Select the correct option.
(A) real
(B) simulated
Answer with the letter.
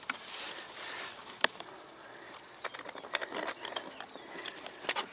B